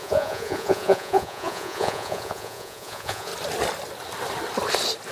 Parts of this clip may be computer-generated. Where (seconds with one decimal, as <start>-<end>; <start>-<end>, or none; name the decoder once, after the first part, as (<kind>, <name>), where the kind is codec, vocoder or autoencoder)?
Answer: 0.0-3.3 (vocoder, Vocos)